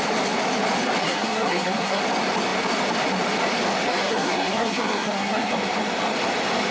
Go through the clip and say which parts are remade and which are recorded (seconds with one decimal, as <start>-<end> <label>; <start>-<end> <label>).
0.0-1.0 recorded; 1.0-2.0 remade; 2.0-3.9 recorded; 3.9-5.5 remade; 5.5-6.7 recorded